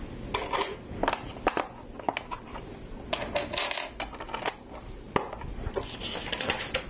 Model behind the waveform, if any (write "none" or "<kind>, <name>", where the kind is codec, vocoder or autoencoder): none